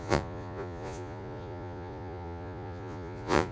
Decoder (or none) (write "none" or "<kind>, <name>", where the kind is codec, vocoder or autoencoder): vocoder, Vocos